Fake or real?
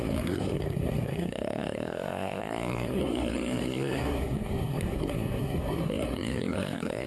fake